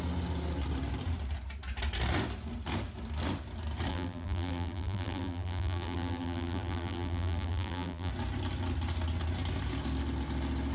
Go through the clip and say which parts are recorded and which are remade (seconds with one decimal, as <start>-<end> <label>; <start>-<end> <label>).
0.0-3.9 recorded; 3.9-8.1 remade; 8.1-10.7 recorded